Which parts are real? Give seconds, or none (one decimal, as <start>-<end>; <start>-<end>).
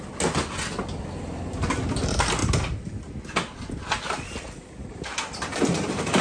0.0-6.2